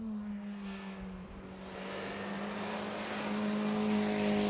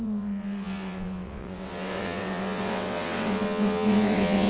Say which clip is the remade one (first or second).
second